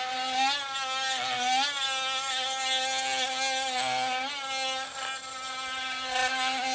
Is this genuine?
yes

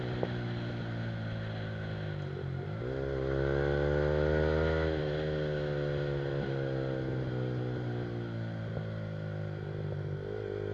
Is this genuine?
yes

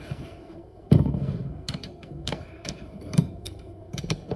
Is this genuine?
no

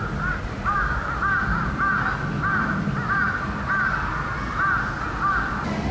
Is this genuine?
yes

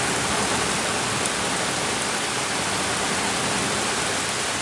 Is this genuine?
yes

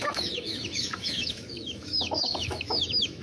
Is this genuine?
no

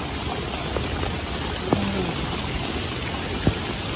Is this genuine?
yes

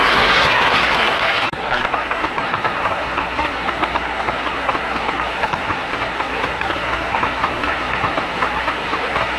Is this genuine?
no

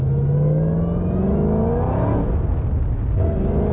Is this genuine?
yes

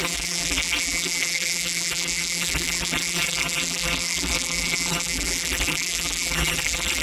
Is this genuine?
no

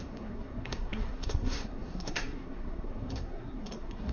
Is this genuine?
no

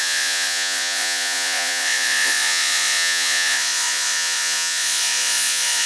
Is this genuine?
no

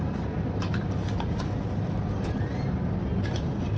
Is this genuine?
yes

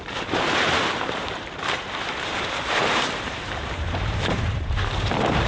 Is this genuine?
no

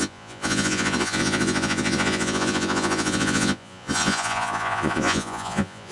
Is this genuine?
no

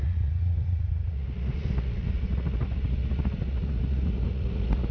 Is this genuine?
no